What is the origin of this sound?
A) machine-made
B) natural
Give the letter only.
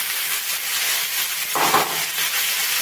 B